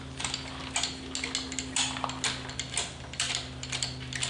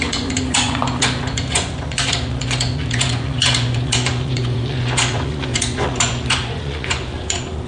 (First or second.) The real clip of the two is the first